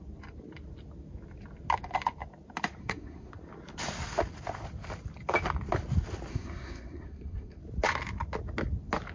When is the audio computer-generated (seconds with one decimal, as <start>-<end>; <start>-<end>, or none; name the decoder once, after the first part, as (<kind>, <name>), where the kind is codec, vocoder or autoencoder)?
2.8-3.3 (codec, SNAC); 6.3-7.6